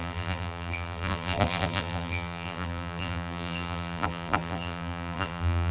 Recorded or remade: remade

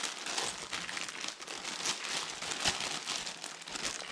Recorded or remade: recorded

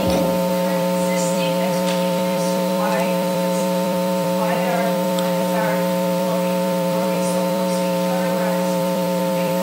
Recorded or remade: remade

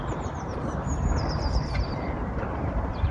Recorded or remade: remade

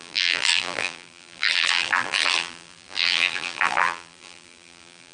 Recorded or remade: remade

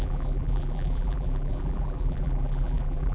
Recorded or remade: remade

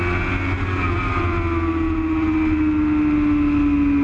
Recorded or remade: recorded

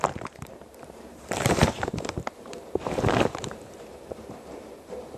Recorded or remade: remade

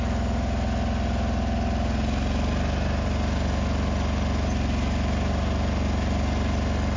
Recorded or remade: recorded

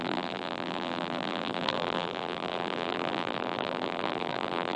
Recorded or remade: remade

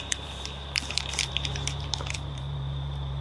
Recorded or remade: remade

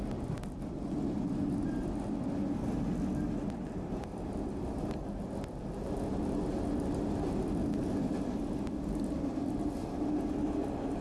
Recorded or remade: recorded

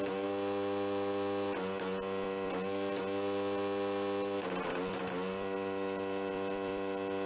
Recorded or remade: remade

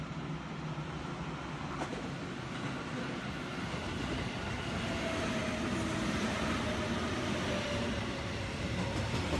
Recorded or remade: recorded